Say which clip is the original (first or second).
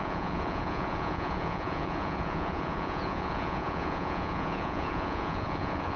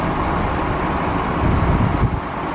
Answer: second